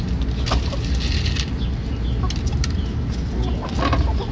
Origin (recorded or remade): recorded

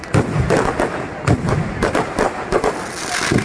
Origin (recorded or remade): recorded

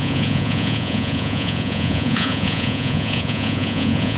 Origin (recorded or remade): remade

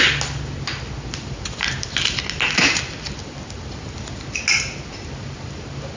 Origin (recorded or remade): recorded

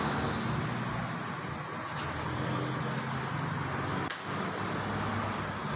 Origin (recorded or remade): recorded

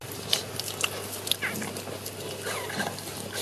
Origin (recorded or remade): recorded